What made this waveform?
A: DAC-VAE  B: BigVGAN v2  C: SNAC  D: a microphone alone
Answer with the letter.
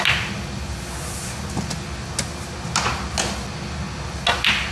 D